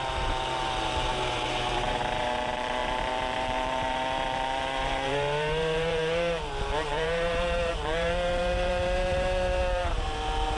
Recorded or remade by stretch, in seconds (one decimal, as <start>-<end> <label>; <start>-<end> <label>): 0.0-10.6 remade

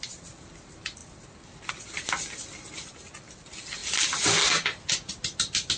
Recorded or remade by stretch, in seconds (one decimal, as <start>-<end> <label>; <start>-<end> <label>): 0.0-5.8 recorded

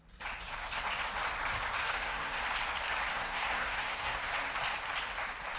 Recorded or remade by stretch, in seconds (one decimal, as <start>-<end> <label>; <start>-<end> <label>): 0.0-1.8 recorded; 1.8-2.4 remade; 2.4-3.1 recorded; 3.1-4.3 remade; 4.3-5.6 recorded

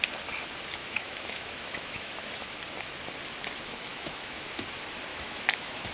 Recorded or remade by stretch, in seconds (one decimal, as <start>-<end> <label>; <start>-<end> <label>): 0.0-0.8 recorded; 0.8-2.6 remade; 2.6-3.9 recorded; 3.9-4.6 remade; 4.6-5.1 recorded; 5.1-5.9 remade

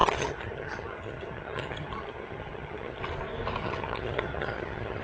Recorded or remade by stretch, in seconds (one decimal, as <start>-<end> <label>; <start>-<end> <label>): 0.0-3.0 remade; 3.0-3.6 recorded; 3.6-5.0 remade

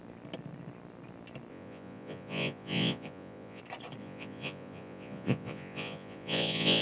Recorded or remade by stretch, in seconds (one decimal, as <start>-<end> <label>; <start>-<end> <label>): 0.0-1.5 recorded; 1.5-3.6 remade; 3.6-4.0 recorded; 4.0-6.8 remade

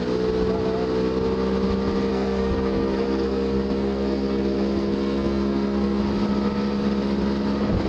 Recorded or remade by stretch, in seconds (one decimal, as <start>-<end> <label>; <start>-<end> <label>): 0.0-2.1 recorded; 2.1-6.0 remade; 6.0-7.9 recorded